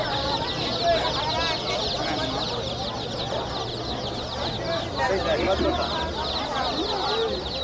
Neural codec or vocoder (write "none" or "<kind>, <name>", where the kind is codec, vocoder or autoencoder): none